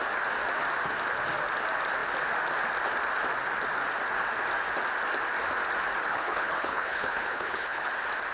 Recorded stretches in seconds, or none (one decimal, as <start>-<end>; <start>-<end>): 0.0-6.1; 7.9-8.3